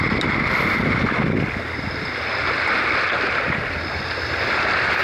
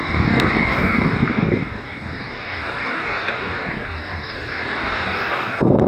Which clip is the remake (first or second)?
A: second